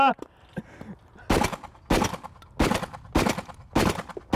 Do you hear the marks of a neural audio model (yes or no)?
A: no